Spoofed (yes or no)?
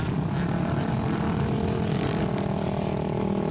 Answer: no